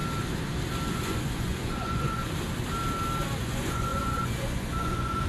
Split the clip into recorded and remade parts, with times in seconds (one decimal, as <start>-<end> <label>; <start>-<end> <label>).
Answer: 0.0-0.9 recorded; 0.9-2.2 remade; 2.2-3.4 recorded; 3.4-5.3 remade